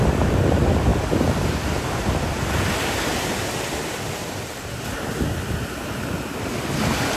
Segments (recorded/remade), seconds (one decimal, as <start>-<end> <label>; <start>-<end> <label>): 0.0-7.2 recorded